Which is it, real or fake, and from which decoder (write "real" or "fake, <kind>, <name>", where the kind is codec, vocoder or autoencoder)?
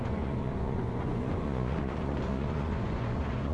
fake, vocoder, Vocos